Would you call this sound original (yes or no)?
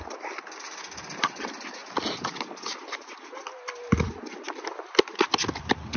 yes